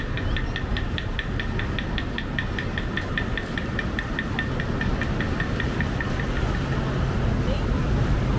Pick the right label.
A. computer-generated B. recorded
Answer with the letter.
B